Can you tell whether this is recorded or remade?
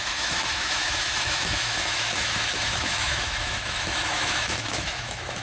remade